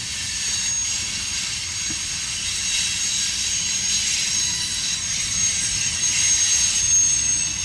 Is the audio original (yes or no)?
yes